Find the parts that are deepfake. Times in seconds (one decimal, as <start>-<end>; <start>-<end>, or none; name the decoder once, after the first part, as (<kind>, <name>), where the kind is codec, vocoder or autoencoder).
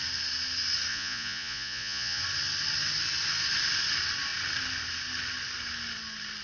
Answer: 0.9-2.2 (vocoder, Vocos)